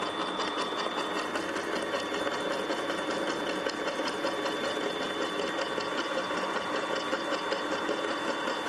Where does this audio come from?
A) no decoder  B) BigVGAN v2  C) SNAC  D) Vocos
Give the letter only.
A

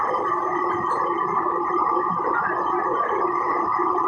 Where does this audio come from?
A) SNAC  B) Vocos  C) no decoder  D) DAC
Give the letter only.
C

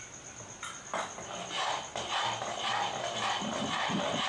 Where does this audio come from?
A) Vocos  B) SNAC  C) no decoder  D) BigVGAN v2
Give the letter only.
C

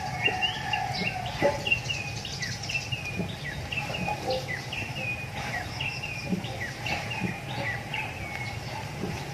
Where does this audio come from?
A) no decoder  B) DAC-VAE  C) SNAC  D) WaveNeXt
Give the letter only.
A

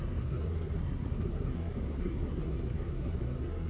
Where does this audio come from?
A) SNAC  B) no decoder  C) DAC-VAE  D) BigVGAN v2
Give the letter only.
A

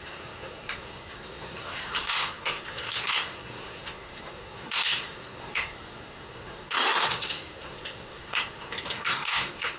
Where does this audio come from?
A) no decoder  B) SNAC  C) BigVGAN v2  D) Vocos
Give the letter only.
B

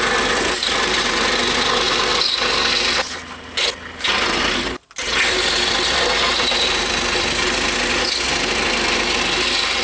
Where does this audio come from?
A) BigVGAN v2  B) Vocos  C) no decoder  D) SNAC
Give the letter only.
C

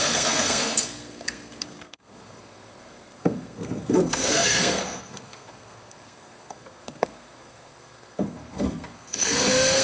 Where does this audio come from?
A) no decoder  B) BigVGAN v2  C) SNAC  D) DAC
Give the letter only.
C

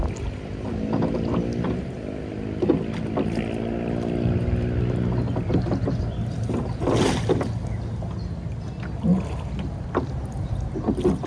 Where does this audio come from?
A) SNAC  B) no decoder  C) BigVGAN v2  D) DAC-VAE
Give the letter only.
B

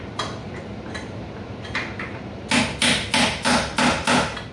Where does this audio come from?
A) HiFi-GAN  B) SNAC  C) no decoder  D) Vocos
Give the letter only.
C